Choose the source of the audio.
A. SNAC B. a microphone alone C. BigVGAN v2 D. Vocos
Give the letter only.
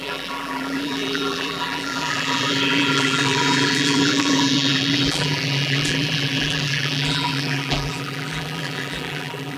C